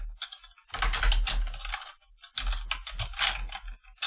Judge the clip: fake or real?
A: real